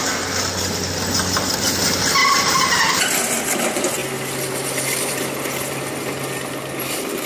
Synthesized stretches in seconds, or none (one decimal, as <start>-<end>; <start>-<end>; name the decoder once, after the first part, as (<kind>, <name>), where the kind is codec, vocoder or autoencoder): 2.2-2.8 (vocoder, BigVGAN v2)